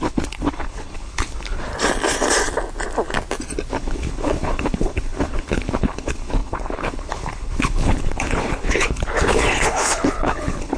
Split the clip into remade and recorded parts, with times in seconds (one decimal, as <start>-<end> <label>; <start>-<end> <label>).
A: 0.0-1.7 remade; 1.7-3.7 recorded; 3.7-10.8 remade